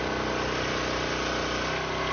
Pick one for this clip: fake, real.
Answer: real